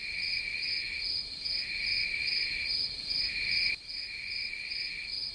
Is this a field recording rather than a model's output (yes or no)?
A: yes